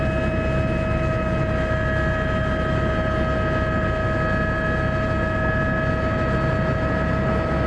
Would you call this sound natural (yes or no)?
yes